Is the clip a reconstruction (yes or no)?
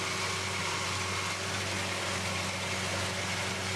no